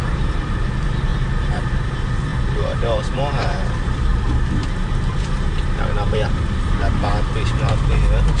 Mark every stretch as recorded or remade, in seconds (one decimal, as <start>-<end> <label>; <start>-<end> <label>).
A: 0.0-1.1 remade; 1.1-1.9 recorded; 1.9-4.1 remade; 4.1-4.7 recorded; 4.7-8.4 remade